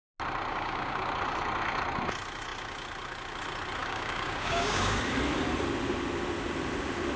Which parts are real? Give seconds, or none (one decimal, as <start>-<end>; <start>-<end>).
0.0-0.5; 1.1-3.8; 5.0-7.2